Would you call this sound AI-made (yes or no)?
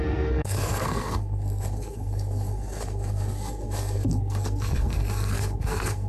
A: yes